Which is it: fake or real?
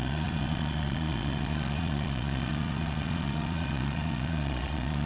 fake